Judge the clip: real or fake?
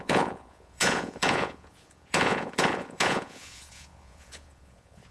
fake